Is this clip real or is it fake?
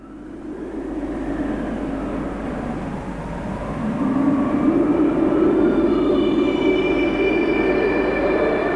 real